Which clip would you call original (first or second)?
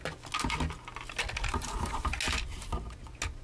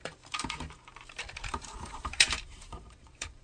first